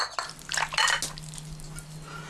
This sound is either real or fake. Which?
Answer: real